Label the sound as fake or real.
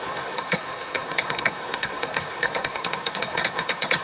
fake